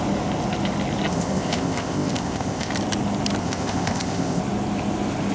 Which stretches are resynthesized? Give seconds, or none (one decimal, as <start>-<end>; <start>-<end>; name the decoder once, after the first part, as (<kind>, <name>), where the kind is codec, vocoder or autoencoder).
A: 1.1-2.7 (codec, ZipCodec); 3.4-4.4